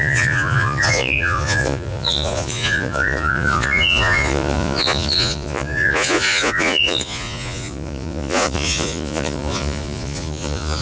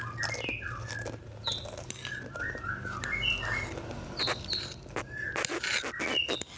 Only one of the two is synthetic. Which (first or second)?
first